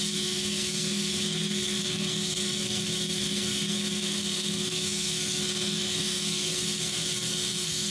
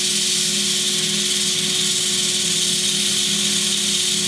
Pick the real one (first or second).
second